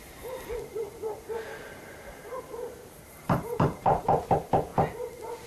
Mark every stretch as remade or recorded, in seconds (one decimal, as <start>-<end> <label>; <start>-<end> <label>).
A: 0.0-0.7 recorded; 0.7-4.0 remade; 4.0-5.5 recorded